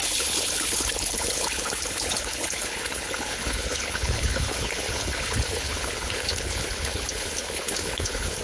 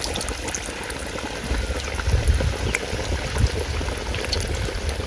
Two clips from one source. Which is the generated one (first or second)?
first